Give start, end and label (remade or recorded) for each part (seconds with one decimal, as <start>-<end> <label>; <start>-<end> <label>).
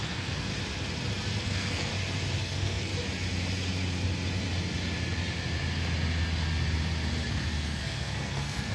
0.0-0.5 remade; 0.5-1.4 recorded; 1.4-1.9 remade; 1.9-2.4 recorded; 2.4-2.9 remade; 2.9-7.3 recorded; 7.3-8.7 remade